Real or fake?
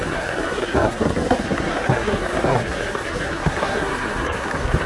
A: fake